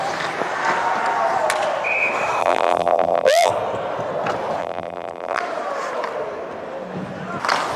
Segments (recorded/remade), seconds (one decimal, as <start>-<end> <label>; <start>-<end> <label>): 0.0-2.4 recorded; 2.4-3.5 remade; 3.5-4.6 recorded; 4.6-5.4 remade; 5.4-7.8 recorded